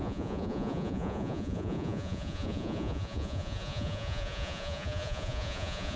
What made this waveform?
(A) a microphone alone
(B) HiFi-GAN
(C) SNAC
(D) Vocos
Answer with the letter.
D